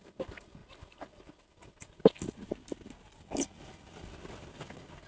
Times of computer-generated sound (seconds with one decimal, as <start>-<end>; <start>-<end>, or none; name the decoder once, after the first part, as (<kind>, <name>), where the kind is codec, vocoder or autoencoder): none